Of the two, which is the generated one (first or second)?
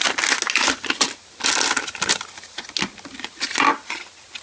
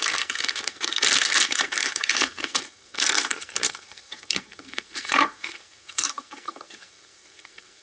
second